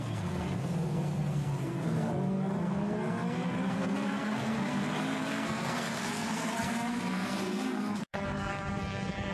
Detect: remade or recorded remade